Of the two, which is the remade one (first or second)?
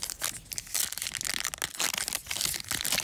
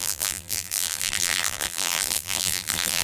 second